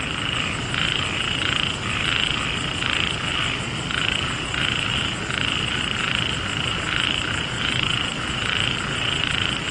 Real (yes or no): yes